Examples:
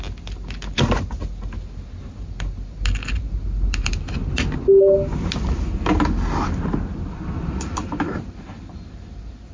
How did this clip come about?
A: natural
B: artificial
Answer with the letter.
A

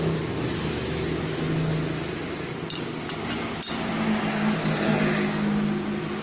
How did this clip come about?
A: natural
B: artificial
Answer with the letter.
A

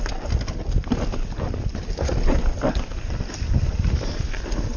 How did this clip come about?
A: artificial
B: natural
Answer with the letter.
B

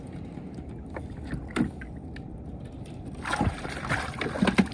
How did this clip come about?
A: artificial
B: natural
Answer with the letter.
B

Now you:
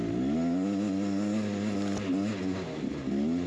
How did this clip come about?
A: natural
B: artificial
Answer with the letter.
A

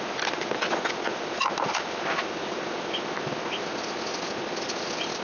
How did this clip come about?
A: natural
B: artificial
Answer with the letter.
A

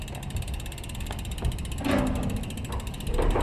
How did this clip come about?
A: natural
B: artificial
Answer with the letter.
A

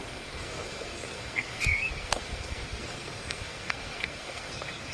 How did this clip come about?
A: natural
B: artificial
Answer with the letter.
B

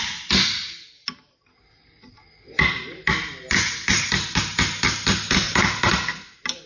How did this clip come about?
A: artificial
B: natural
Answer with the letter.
B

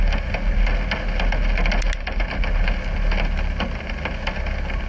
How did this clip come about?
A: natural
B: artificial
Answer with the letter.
A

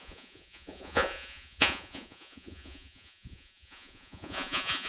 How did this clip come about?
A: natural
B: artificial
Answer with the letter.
B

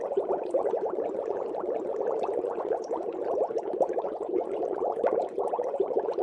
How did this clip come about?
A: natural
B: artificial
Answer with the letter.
B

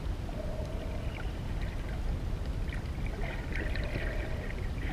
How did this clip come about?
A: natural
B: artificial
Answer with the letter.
A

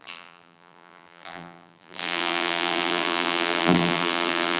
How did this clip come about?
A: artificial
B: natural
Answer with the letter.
A